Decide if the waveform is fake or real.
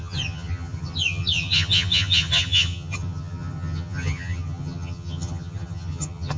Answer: fake